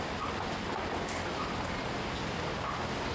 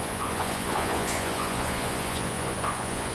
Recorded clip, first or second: first